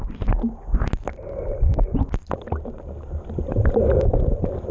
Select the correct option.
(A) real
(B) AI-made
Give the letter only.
A